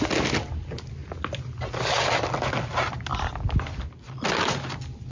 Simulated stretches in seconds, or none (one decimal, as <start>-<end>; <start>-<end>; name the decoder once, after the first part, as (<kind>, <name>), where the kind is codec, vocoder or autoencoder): none